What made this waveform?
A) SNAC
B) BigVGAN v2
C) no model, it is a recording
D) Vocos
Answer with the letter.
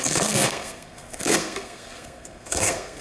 A